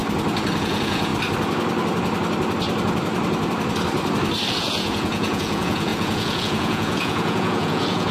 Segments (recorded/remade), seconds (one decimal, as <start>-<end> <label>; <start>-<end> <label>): 0.0-0.6 recorded; 0.6-1.1 remade; 1.1-4.5 recorded; 4.5-8.1 remade